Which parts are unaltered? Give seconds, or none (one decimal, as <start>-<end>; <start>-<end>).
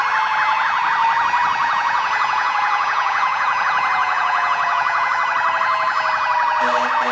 0.0-1.6; 5.1-7.1